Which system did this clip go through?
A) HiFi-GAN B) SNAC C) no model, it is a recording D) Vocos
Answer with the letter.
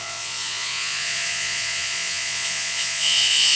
D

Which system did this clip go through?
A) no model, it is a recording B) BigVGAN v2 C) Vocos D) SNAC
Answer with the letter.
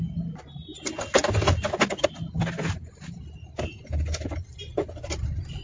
A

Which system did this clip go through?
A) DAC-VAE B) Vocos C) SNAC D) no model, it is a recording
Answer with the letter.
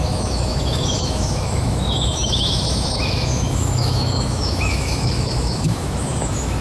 A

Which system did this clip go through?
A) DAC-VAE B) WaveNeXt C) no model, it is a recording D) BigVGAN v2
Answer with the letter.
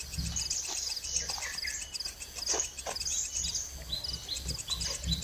C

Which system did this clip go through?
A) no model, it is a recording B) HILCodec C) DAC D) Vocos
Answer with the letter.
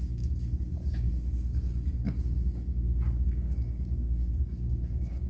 C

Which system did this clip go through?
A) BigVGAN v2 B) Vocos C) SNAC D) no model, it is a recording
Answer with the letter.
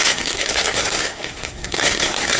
C